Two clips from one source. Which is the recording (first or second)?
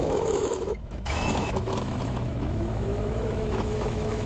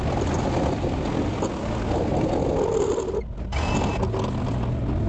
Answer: second